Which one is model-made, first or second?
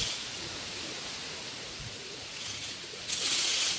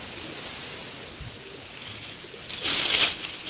first